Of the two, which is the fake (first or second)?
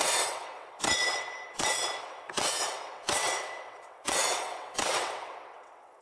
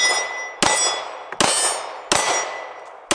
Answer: first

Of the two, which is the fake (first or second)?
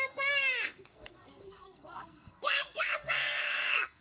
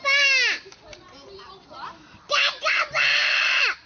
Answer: first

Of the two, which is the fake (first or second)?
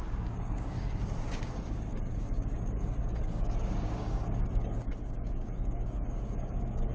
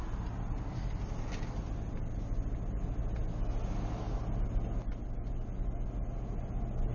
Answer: first